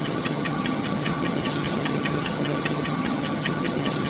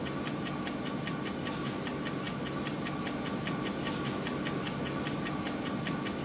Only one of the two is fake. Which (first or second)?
first